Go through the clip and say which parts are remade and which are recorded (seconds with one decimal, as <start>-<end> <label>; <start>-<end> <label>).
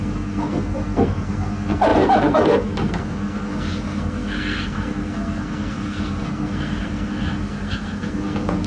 0.0-8.7 remade